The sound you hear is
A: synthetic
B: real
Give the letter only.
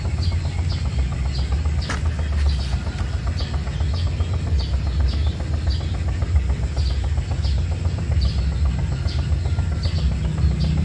B